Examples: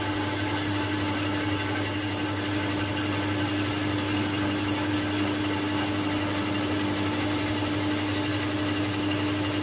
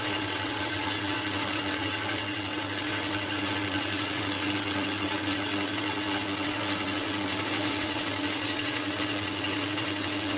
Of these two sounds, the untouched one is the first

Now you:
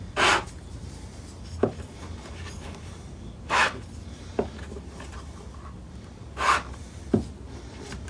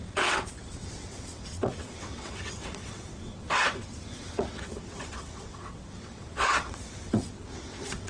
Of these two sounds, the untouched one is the first